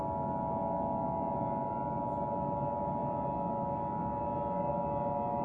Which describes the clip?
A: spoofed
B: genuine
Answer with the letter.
B